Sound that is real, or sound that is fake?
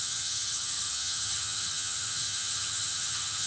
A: fake